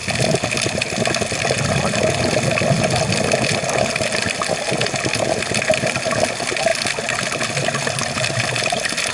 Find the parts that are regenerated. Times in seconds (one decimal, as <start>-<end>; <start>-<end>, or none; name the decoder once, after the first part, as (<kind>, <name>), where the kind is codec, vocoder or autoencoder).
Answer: none